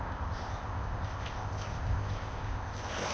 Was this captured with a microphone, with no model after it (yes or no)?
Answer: no